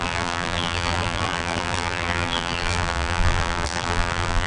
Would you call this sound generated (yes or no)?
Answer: yes